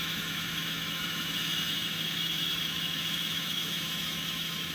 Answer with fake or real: fake